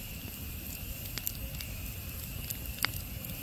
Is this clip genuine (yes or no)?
yes